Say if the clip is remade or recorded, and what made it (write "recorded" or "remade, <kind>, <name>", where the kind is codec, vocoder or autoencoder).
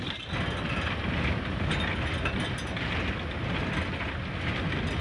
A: recorded